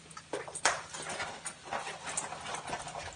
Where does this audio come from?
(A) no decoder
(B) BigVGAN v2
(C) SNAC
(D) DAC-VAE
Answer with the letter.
A